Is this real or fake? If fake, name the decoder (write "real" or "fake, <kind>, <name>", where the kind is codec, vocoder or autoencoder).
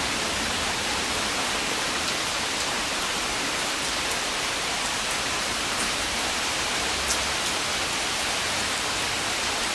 fake, vocoder, BigVGAN v2